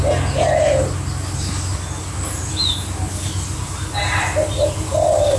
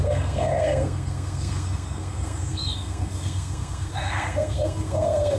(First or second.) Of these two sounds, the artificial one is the second